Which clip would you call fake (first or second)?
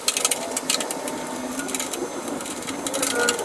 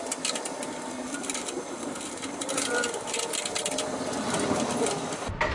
second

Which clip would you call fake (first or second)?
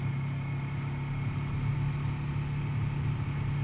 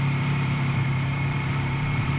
second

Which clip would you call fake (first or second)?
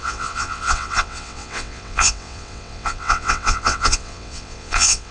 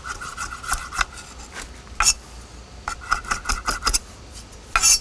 first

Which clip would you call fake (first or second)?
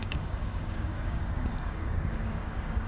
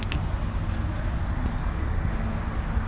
first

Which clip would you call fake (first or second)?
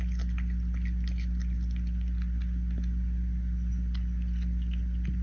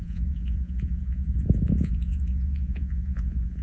second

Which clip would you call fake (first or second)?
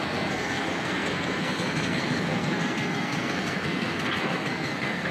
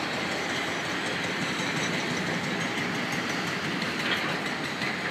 first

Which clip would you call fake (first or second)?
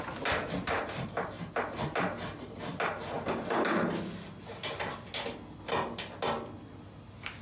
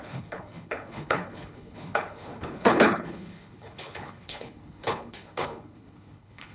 second